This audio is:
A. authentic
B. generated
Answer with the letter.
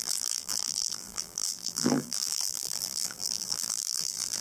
B